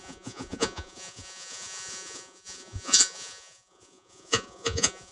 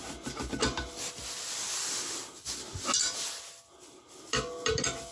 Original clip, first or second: second